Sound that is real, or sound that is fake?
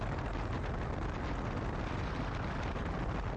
real